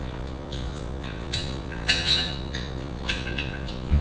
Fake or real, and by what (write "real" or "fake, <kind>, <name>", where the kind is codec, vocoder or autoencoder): fake, vocoder, Vocos